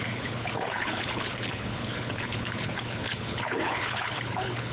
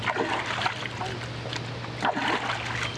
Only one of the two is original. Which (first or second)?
second